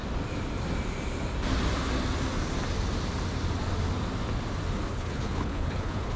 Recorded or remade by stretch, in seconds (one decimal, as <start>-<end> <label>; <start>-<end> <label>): 0.0-4.9 recorded; 4.9-6.2 remade

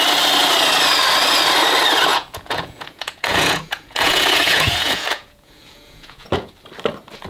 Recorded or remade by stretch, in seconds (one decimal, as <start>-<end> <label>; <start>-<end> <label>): 0.0-2.1 recorded; 2.1-6.5 remade; 6.5-7.3 recorded

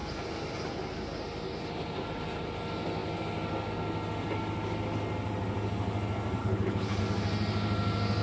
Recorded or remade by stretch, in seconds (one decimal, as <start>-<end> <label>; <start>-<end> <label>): 0.0-6.4 recorded; 6.4-7.0 remade; 7.0-8.2 recorded

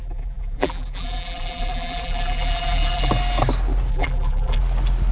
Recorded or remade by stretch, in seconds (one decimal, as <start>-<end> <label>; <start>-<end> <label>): 0.0-3.1 remade; 3.1-3.9 recorded; 3.9-4.6 remade; 4.6-5.1 recorded